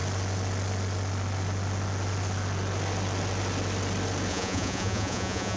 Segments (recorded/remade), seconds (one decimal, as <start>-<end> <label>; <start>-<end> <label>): 0.0-4.3 recorded; 4.3-5.6 remade